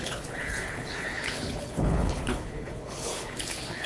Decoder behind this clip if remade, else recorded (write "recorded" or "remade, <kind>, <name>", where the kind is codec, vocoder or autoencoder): remade, codec, HILCodec